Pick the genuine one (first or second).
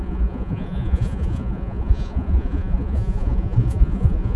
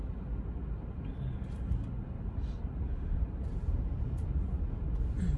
second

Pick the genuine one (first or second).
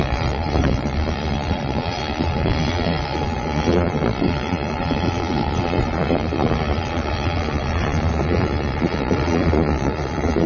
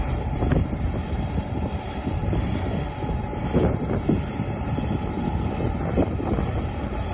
second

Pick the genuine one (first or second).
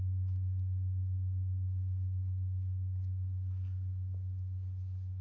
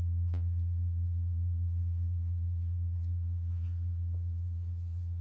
first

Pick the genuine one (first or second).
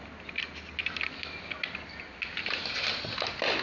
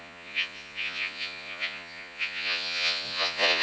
first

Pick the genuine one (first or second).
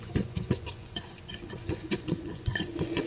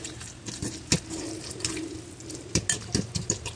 second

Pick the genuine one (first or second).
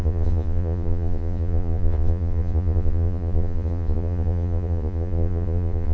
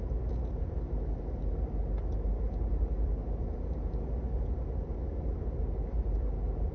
second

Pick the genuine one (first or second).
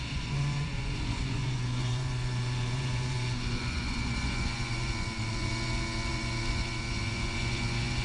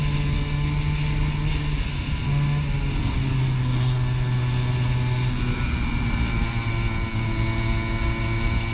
second